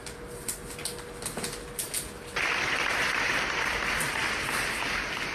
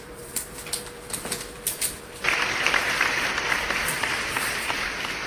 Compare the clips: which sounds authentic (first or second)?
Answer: first